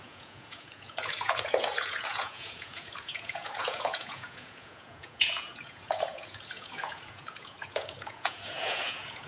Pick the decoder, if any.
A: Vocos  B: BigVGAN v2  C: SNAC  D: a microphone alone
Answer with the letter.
A